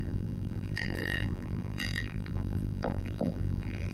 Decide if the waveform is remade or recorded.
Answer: remade